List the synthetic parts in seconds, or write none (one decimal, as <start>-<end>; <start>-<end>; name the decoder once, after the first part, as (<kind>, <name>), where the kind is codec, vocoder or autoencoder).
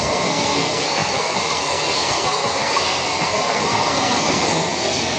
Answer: 0.0-5.2 (codec, SNAC)